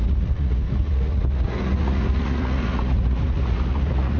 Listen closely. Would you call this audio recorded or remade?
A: remade